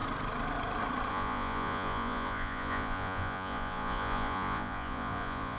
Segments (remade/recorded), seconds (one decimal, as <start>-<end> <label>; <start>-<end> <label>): 0.0-1.1 recorded; 1.1-5.6 remade